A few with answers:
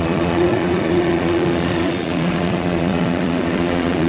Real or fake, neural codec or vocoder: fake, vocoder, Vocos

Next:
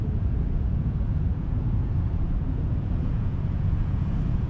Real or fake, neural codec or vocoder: fake, vocoder, Vocos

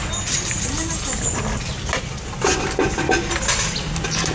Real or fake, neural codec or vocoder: real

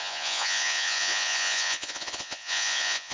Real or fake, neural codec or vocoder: fake, vocoder, Vocos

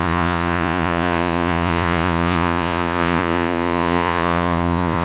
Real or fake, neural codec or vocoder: fake, vocoder, Vocos